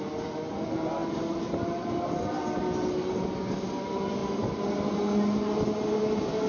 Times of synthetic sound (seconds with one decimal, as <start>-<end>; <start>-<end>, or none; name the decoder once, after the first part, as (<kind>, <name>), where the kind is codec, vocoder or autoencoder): none